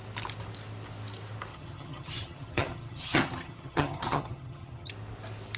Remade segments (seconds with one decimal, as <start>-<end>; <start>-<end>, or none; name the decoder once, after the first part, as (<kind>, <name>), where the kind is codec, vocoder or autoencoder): 1.5-4.9 (vocoder, HiFi-GAN)